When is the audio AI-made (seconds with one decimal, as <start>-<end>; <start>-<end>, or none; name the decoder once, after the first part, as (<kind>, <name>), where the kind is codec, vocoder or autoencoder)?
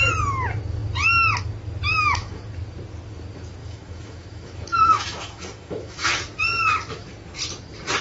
1.9-2.4 (autoencoder, DAC-VAE); 3.6-6.1